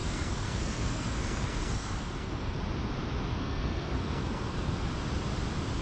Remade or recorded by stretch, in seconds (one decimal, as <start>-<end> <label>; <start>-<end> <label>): 0.0-2.6 remade; 2.6-3.3 recorded; 3.3-4.9 remade; 4.9-5.8 recorded